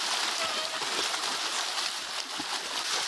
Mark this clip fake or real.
real